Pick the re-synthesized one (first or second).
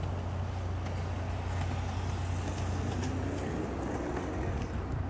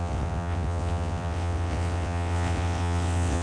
second